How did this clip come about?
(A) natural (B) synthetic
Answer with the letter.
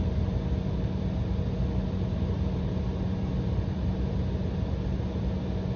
A